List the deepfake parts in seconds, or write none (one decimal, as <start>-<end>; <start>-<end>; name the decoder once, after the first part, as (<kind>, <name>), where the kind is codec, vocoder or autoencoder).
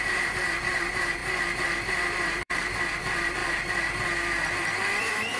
0.0-1.2 (vocoder, BigVGAN v2); 1.9-3.4; 5.0-5.4